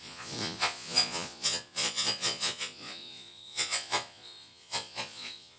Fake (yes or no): yes